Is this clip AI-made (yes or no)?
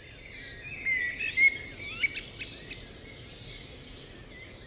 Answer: no